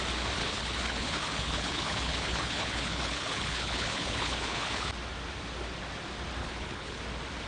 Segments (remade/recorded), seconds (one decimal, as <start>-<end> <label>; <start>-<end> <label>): 0.0-0.4 recorded; 0.4-4.9 remade; 4.9-6.4 recorded; 6.4-7.0 remade; 7.0-7.5 recorded